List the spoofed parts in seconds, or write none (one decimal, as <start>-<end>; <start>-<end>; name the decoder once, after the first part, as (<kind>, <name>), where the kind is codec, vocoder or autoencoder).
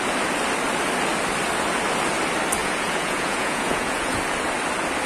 2.6-4.2 (vocoder, Vocos)